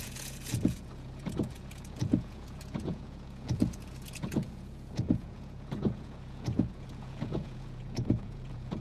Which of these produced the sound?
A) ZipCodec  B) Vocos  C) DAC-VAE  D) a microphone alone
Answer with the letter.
B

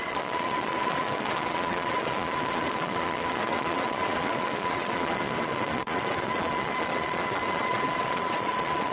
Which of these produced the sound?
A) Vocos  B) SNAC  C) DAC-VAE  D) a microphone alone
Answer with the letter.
A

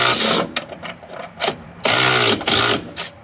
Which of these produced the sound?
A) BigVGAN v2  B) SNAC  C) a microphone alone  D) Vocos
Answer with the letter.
C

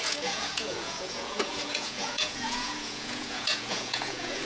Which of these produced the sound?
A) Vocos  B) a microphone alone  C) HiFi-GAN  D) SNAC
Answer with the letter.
A